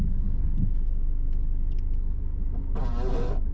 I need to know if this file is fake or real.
real